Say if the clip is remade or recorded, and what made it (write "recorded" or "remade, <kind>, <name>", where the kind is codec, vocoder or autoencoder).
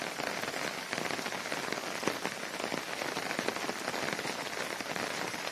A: recorded